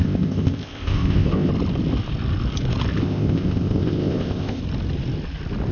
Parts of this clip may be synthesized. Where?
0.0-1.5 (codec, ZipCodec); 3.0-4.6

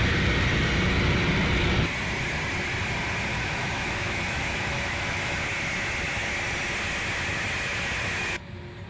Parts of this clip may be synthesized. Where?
3.3-5.4 (autoencoder, DAC-VAE)